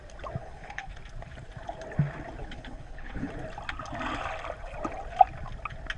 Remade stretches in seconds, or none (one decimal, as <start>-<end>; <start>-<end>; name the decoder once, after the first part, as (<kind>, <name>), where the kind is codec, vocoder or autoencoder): 0.4-0.9 (codec, HILCodec); 2.4-3.3